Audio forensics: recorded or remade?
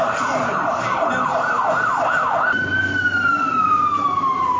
recorded